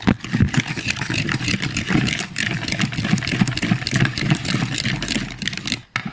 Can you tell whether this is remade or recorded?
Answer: recorded